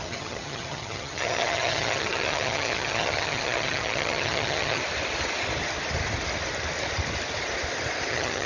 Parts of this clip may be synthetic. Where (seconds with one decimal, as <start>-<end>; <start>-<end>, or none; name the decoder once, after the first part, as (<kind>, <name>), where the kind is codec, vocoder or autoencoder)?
0.0-4.8 (vocoder, HiFi-GAN); 8.1-8.5